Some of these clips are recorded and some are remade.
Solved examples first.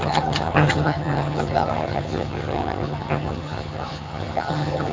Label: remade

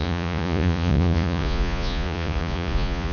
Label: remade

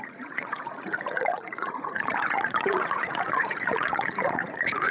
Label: remade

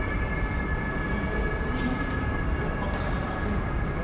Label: recorded